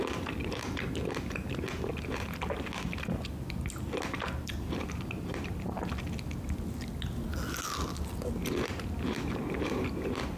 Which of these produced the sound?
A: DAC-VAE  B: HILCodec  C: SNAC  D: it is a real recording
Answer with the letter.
D